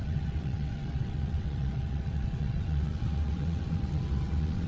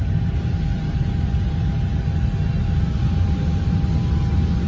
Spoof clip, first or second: first